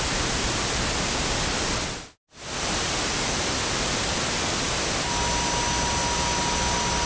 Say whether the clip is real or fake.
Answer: real